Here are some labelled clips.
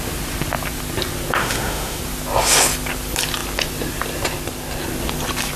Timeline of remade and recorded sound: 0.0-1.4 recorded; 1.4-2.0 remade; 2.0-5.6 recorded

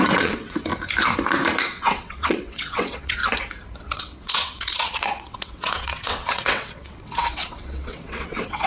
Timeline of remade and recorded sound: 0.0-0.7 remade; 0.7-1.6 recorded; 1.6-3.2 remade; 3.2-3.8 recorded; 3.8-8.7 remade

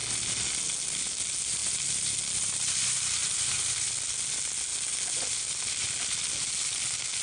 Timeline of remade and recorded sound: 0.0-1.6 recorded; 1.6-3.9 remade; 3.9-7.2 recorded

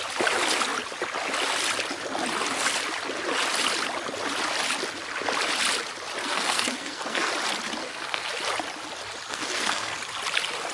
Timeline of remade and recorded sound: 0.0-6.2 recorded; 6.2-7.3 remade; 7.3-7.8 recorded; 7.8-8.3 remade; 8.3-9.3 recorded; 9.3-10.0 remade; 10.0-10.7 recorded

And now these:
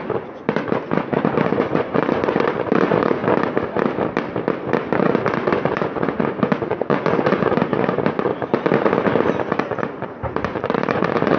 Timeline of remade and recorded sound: 0.0-3.2 remade; 3.2-5.0 recorded; 5.0-8.3 remade; 8.3-9.5 recorded; 9.5-11.4 remade

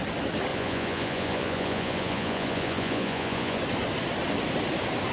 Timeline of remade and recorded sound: 0.0-0.5 recorded; 0.5-3.6 remade; 3.6-5.1 recorded

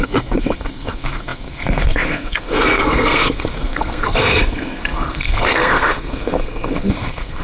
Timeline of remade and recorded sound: 0.0-7.4 remade

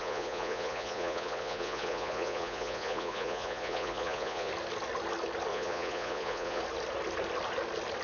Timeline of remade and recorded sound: 0.0-4.5 remade; 4.5-5.5 recorded; 5.5-6.6 remade; 6.6-8.0 recorded